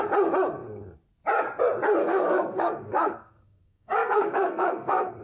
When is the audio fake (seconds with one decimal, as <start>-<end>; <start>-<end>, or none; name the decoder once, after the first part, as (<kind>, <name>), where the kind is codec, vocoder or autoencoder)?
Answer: 2.0-5.2 (codec, SNAC)